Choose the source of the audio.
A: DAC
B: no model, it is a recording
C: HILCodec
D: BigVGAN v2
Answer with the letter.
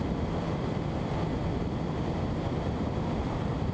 D